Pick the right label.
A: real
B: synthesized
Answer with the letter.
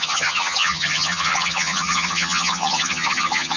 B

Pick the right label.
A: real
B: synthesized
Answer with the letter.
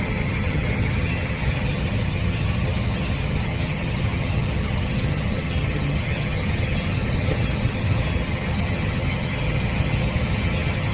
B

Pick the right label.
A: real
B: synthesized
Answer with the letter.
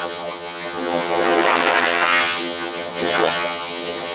B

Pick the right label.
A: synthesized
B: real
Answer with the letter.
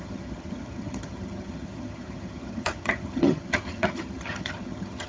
A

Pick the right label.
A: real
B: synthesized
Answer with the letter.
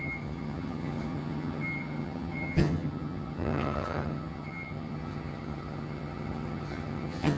B